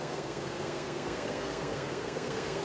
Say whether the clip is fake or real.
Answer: fake